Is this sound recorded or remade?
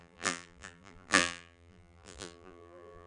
remade